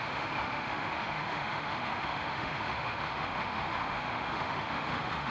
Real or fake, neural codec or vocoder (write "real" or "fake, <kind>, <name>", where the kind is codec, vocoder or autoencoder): fake, autoencoder, DAC-VAE